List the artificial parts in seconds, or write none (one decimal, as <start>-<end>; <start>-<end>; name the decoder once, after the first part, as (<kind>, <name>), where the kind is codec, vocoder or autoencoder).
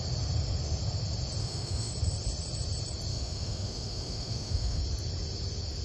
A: 1.4-1.9 (autoencoder, DAC-VAE); 3.1-4.8